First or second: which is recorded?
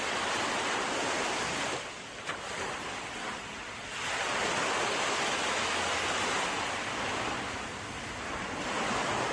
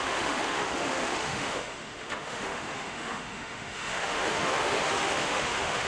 first